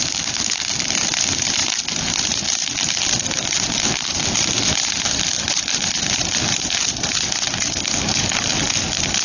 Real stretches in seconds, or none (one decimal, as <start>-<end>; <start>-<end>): 0.0-9.2